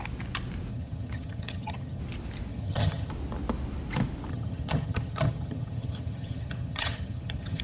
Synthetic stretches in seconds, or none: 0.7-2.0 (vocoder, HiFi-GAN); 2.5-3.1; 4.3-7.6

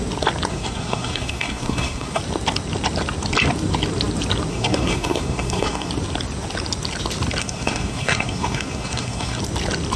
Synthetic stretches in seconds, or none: 0.5-2.2 (codec, SNAC); 4.5-5.9; 7.4-9.4

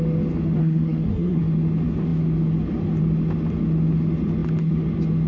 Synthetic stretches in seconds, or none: 0.6-1.4 (codec, SNAC)

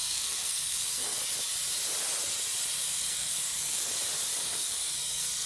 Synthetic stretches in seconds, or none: 0.0-1.2 (codec, SNAC); 2.8-3.9; 4.4-5.5